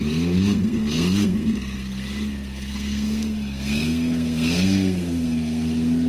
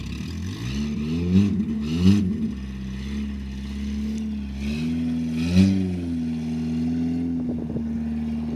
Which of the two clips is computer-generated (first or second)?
first